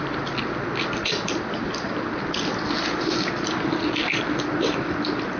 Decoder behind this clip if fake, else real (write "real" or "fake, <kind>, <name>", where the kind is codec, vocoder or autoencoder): real